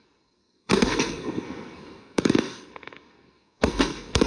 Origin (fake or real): fake